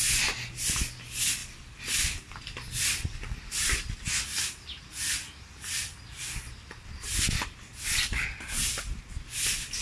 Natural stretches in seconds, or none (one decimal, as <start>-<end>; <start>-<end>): 0.0-9.8